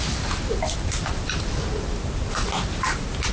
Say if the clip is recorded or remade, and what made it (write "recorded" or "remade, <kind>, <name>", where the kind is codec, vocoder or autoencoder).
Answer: recorded